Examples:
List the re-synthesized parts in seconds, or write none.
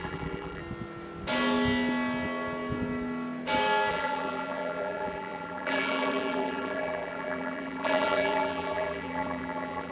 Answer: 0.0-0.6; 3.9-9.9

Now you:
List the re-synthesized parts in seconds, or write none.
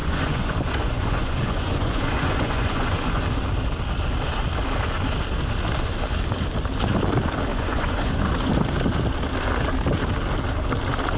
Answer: 0.0-3.2; 7.5-8.5